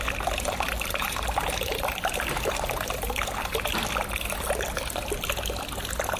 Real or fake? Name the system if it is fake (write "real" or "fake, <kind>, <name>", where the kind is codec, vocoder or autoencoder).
real